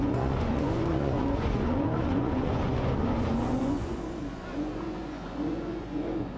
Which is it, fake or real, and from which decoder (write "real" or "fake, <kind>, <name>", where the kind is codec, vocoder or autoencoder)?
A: fake, vocoder, Vocos